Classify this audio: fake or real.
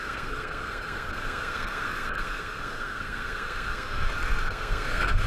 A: fake